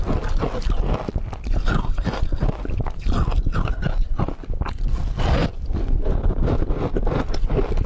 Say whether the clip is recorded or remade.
recorded